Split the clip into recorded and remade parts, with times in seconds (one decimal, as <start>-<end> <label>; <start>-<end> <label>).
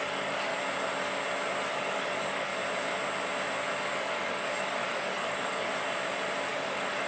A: 0.0-0.5 remade; 0.5-1.7 recorded; 1.7-2.5 remade; 2.5-3.8 recorded; 3.8-5.7 remade; 5.7-6.5 recorded; 6.5-7.1 remade